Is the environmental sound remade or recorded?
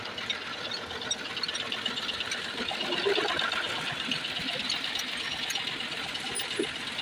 recorded